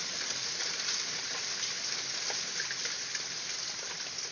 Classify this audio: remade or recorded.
recorded